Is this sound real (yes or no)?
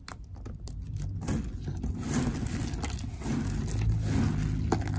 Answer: yes